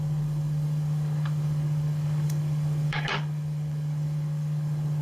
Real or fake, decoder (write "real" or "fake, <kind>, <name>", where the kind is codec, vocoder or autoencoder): fake, codec, DAC